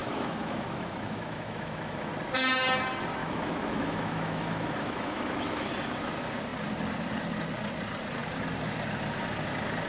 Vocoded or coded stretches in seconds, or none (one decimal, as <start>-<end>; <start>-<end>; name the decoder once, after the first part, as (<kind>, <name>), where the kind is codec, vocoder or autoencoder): 0.0-2.1 (autoencoder, DAC-VAE); 3.2-5.7